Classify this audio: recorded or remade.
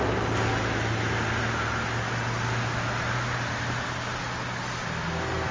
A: recorded